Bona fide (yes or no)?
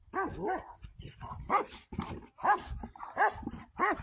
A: yes